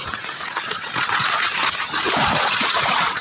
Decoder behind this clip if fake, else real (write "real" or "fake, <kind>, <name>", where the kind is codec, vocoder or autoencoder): fake, vocoder, Vocos